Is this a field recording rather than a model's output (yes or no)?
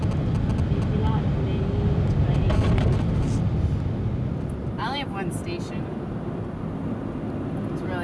yes